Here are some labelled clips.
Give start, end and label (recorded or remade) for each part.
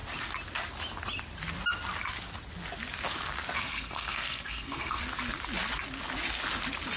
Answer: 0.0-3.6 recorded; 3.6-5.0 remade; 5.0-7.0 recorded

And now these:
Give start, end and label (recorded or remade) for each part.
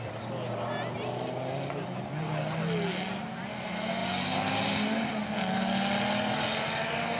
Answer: 0.0-7.2 recorded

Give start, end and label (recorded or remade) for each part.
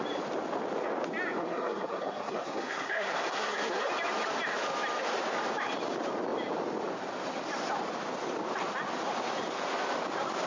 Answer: 0.0-1.4 recorded; 1.4-3.9 remade; 3.9-10.5 recorded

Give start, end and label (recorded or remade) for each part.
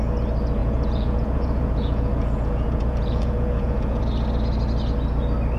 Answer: 0.0-0.6 recorded; 0.6-4.0 remade; 4.0-5.6 recorded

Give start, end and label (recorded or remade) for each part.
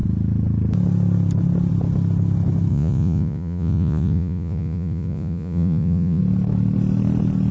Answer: 0.0-2.7 recorded; 2.7-6.2 remade; 6.2-7.5 recorded